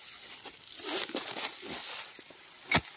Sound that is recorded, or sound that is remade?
recorded